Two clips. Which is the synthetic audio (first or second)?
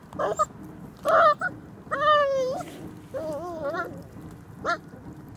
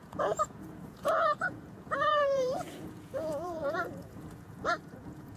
second